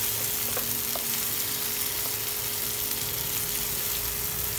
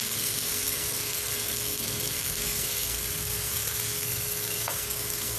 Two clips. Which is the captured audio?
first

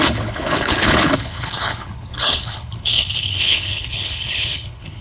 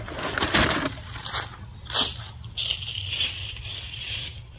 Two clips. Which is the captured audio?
second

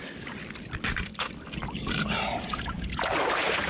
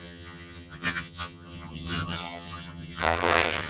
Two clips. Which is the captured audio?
first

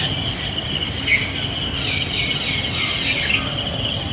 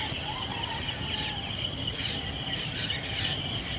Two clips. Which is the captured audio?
first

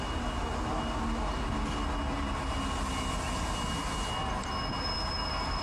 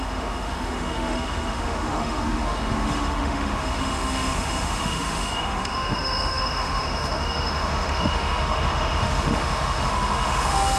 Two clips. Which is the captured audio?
first